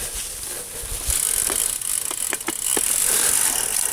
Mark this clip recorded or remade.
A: recorded